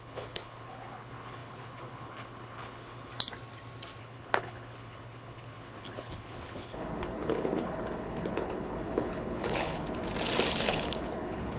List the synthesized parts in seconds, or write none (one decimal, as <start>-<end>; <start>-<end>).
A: 0.0-3.1; 4.0-10.0; 10.5-11.6